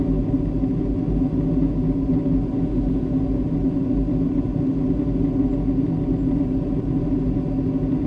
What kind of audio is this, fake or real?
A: real